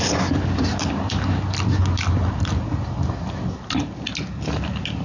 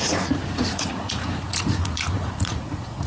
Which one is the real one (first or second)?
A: first